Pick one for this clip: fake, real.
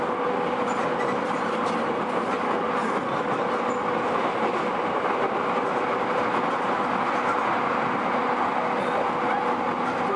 real